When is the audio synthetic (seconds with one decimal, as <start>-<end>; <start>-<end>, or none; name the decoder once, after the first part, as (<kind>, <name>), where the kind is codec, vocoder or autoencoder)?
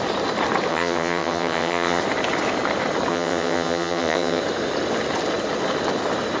0.7-2.0 (vocoder, HiFi-GAN); 3.1-4.4